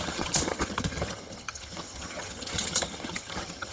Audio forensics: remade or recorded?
remade